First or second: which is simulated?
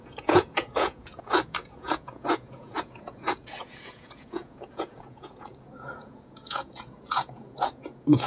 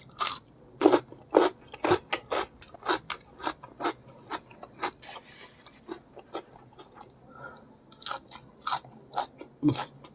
first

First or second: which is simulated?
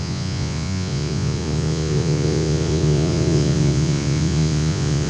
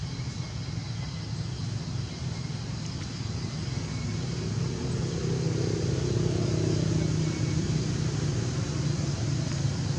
first